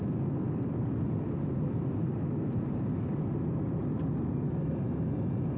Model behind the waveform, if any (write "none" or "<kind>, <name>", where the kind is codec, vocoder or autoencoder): none